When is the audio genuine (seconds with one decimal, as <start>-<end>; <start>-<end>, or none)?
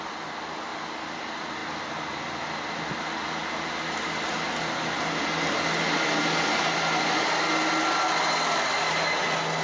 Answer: 0.0-9.6